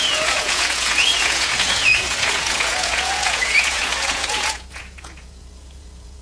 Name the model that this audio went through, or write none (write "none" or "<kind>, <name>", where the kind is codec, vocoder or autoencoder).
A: vocoder, Vocos